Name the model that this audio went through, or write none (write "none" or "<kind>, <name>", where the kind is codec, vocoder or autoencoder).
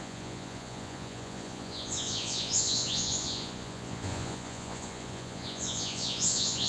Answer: vocoder, Vocos